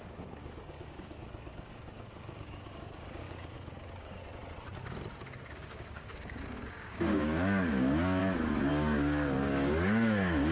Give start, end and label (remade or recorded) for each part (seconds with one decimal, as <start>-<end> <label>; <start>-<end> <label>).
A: 0.0-4.2 remade; 4.2-5.5 recorded; 5.5-8.2 remade; 8.2-8.7 recorded; 8.7-10.5 remade